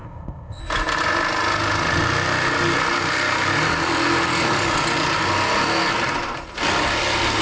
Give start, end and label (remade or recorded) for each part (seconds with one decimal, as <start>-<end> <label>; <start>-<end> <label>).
0.0-0.6 remade; 0.6-7.4 recorded